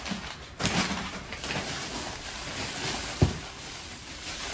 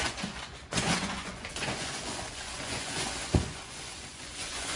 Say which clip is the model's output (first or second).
second